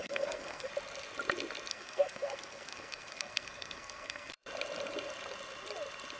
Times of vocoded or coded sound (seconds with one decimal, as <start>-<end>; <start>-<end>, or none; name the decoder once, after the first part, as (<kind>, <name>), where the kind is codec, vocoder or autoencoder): 0.0-0.7 (codec, SNAC); 1.7-4.3